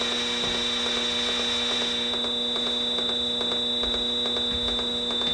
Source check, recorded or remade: recorded